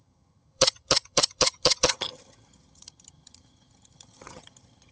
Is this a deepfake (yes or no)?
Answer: yes